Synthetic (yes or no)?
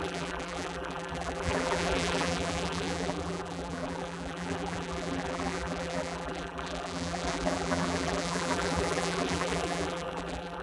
yes